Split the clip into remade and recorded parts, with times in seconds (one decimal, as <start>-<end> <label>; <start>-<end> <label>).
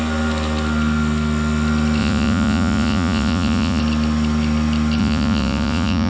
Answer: 0.0-2.0 recorded; 2.0-3.8 remade; 3.8-5.0 recorded; 5.0-6.1 remade